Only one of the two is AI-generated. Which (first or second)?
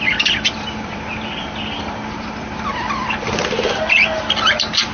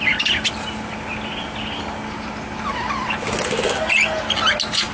first